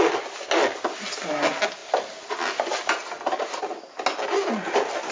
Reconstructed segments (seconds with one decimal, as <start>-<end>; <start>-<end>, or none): none